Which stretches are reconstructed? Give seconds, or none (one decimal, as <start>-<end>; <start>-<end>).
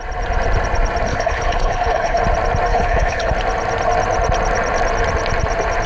1.1-2.2; 2.7-3.3